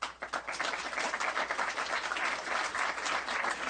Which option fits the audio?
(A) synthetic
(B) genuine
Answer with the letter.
B